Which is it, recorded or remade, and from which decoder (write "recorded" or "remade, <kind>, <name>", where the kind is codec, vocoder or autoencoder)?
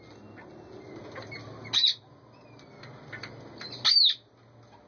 recorded